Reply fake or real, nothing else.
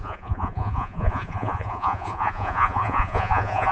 fake